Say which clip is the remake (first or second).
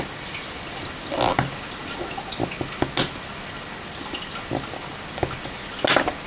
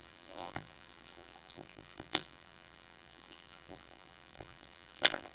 second